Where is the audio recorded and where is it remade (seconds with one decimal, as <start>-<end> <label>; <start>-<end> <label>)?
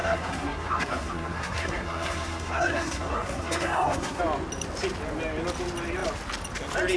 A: 0.0-4.2 remade; 4.2-7.0 recorded